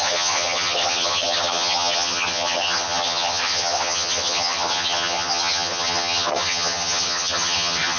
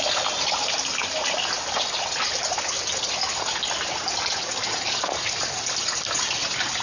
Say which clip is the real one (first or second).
second